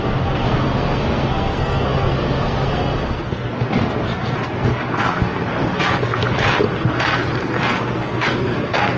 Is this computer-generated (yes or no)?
yes